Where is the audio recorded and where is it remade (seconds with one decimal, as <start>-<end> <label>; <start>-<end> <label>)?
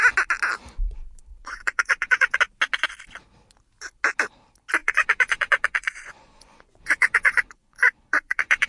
0.0-1.3 recorded; 1.3-2.4 remade; 2.4-4.8 recorded; 4.8-8.7 remade